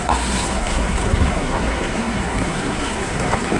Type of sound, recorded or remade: remade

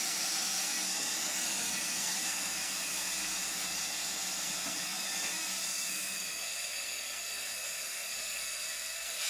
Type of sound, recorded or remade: remade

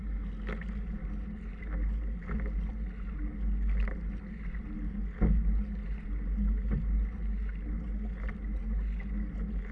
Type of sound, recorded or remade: recorded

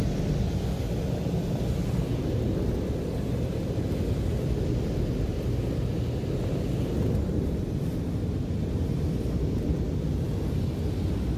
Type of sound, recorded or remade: recorded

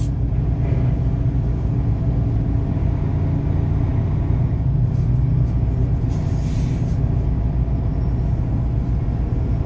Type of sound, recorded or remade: recorded